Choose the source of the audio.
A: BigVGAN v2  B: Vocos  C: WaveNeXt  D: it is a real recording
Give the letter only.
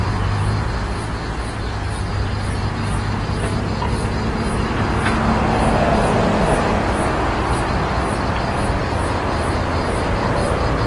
D